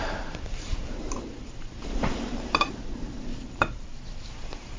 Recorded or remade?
remade